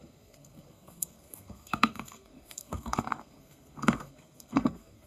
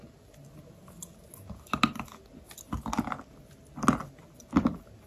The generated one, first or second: first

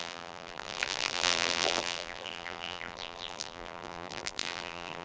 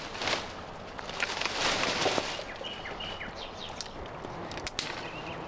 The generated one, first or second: first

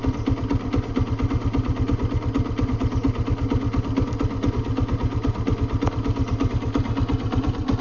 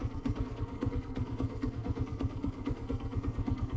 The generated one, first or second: second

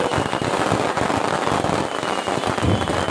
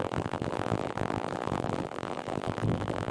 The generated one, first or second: second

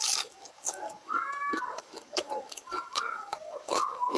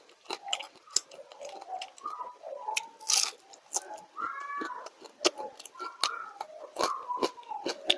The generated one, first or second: first